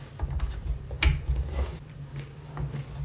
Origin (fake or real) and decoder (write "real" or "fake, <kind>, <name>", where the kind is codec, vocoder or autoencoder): real